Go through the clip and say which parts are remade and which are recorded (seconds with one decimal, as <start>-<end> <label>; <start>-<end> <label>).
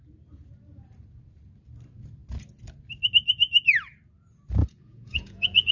0.0-4.6 recorded; 4.6-5.7 remade